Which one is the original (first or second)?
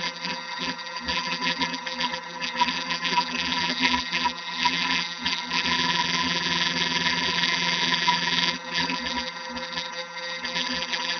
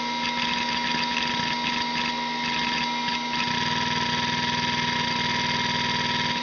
second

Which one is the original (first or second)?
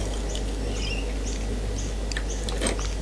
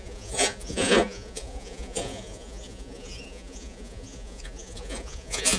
first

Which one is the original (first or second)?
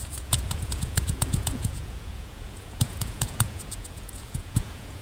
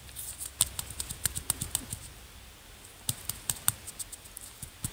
second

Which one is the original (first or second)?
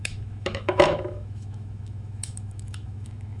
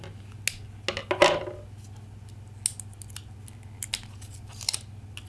second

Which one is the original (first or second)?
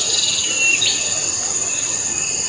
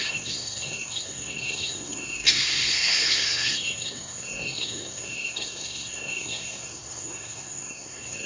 first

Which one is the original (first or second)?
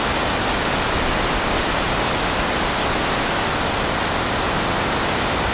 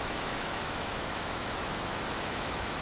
first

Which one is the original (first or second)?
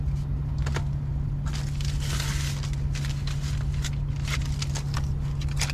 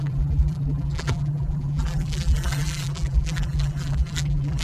first